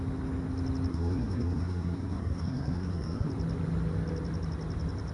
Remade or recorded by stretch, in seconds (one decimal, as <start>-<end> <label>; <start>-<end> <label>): 0.0-0.9 recorded; 0.9-3.3 remade; 3.3-5.1 recorded